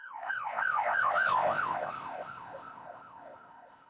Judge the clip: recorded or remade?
remade